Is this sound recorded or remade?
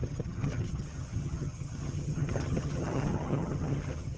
remade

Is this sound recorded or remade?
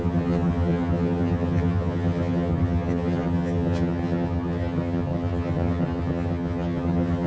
remade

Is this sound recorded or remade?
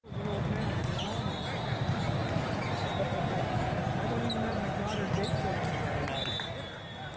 recorded